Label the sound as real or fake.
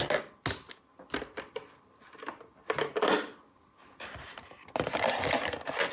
real